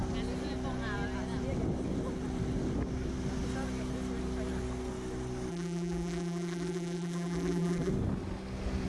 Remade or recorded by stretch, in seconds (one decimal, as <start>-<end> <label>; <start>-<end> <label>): 0.0-5.5 recorded; 5.5-7.9 remade; 7.9-8.9 recorded